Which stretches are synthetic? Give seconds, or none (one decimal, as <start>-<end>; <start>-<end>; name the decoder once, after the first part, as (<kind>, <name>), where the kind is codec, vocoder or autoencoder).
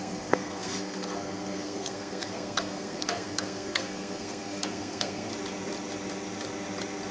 0.0-5.3 (codec, SNAC)